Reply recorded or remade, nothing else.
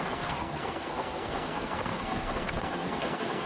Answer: remade